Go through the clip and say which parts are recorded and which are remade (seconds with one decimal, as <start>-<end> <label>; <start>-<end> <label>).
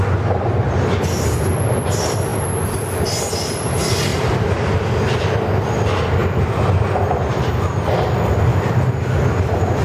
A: 0.0-2.3 recorded; 2.3-3.3 remade; 3.3-4.1 recorded; 4.1-4.8 remade; 4.8-8.5 recorded; 8.5-9.1 remade; 9.1-9.8 recorded